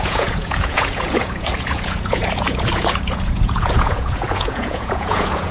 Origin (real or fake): fake